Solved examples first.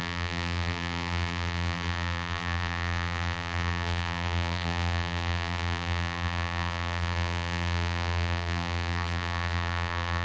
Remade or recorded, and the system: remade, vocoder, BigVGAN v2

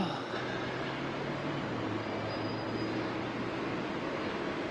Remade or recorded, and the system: recorded